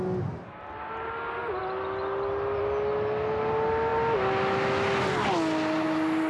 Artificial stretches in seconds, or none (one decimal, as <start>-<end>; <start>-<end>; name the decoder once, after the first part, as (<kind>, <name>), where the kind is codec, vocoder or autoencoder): none

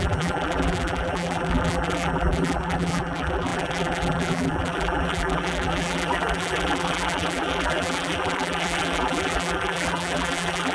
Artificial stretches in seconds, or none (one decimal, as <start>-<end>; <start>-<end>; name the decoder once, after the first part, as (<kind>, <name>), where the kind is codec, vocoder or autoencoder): 0.0-10.7 (vocoder, BigVGAN v2)